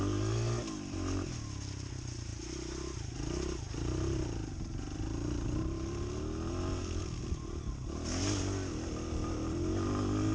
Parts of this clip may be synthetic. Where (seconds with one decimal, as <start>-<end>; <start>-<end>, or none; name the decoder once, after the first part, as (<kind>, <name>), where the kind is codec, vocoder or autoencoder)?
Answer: none